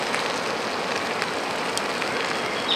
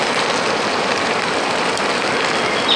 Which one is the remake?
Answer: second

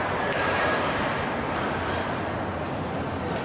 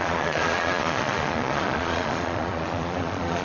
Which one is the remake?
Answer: second